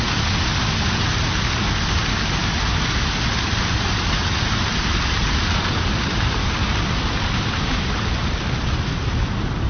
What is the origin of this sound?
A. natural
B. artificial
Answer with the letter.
A